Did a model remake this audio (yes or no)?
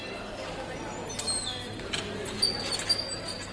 no